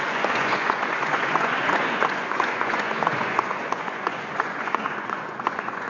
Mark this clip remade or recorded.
remade